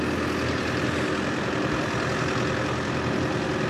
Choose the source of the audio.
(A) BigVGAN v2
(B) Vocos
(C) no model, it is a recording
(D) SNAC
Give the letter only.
C